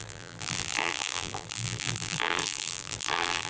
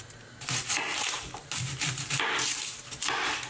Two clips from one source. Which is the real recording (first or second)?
second